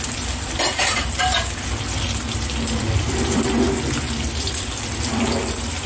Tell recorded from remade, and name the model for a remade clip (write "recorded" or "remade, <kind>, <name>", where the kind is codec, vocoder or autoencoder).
remade, vocoder, BigVGAN v2